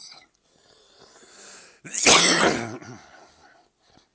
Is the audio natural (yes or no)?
yes